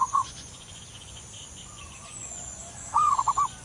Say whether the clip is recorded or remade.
remade